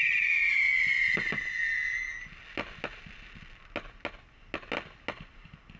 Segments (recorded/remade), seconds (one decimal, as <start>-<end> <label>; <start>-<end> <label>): 0.0-5.8 recorded